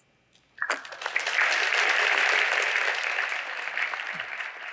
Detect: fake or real real